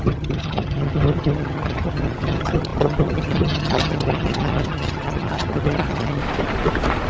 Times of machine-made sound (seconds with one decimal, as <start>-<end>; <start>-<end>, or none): 0.0-6.2